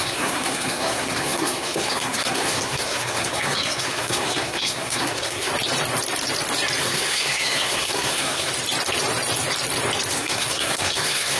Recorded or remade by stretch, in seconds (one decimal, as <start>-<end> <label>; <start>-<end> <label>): 0.0-5.5 remade; 5.5-6.8 recorded; 6.8-8.5 remade; 8.5-10.1 recorded; 10.1-11.4 remade